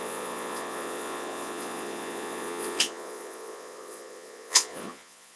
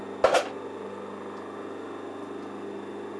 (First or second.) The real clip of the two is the second